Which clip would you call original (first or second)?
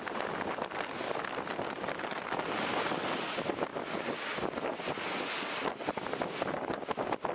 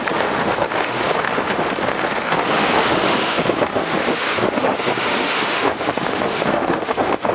first